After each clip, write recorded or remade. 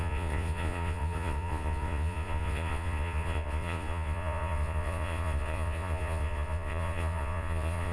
remade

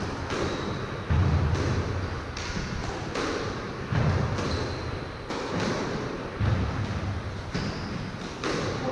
recorded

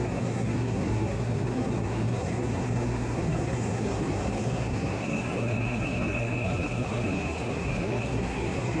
remade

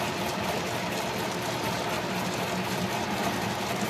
recorded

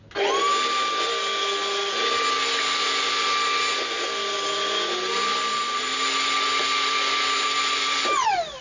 recorded